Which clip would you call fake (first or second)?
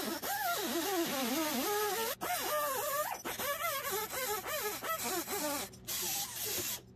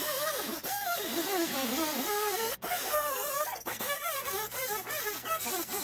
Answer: second